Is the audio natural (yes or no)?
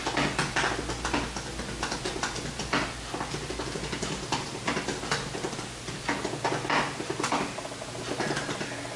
yes